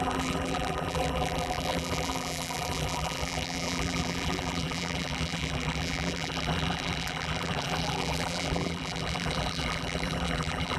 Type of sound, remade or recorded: remade